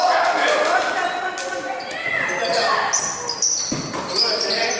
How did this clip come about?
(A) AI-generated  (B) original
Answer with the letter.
B